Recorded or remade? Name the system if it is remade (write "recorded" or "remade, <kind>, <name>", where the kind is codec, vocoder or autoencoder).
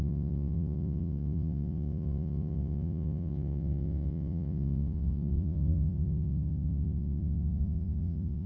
remade, vocoder, Vocos